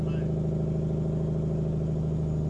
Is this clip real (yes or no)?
yes